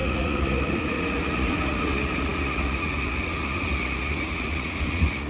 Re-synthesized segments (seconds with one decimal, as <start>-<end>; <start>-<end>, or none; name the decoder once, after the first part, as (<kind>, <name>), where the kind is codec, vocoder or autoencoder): 0.0-5.3 (vocoder, Vocos)